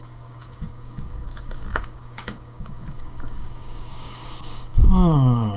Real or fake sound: fake